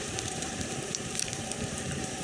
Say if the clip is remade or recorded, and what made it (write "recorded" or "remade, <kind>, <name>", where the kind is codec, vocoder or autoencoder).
remade, vocoder, BigVGAN v2